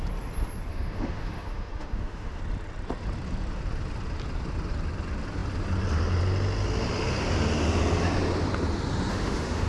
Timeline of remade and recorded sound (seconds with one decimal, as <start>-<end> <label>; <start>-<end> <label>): 0.0-0.7 recorded; 0.7-2.4 remade; 2.4-9.1 recorded; 9.1-9.7 remade